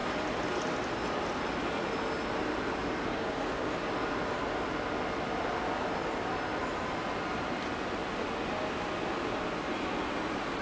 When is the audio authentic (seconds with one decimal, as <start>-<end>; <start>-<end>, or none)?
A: 0.0-3.1; 3.7-10.6